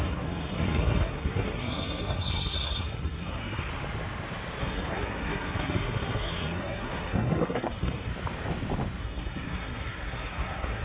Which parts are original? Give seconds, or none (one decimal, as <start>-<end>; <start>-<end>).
3.7-4.6; 8.1-9.0

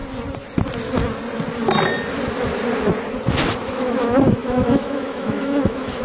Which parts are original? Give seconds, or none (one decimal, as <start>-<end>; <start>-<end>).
0.0-3.6

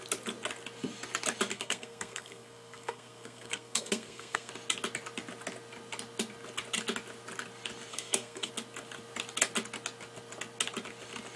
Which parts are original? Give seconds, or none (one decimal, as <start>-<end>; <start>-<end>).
0.0-1.5; 4.5-7.9; 8.5-11.4